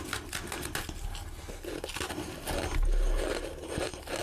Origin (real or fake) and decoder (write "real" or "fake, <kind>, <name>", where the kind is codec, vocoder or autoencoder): real